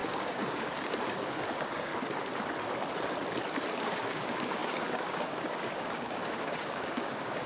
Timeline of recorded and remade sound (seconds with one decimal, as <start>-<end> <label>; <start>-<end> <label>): 0.0-1.9 remade; 1.9-3.8 recorded; 3.8-7.5 remade